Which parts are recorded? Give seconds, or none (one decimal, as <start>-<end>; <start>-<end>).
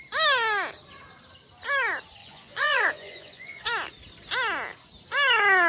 0.0-2.2; 3.6-5.7